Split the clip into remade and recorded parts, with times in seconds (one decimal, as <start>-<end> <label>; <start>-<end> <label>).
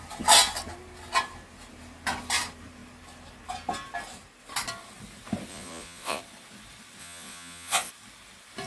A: 0.0-5.5 recorded; 5.5-6.2 remade; 6.2-7.0 recorded; 7.0-7.9 remade; 7.9-8.7 recorded